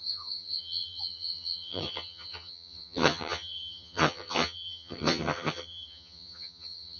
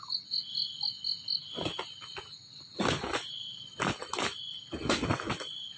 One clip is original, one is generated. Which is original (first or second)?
second